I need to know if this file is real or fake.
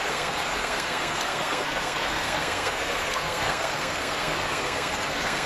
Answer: fake